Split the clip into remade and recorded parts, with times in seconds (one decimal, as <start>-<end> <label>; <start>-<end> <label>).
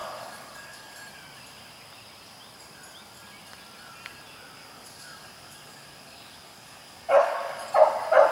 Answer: 0.0-0.9 remade; 0.9-4.6 recorded; 4.6-7.7 remade; 7.7-8.3 recorded